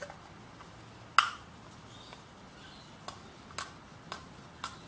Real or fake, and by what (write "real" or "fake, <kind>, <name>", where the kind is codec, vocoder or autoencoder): real